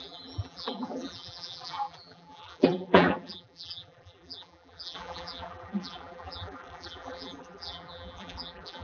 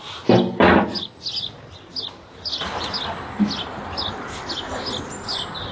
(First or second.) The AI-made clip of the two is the first